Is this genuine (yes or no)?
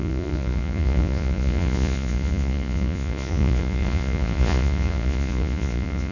no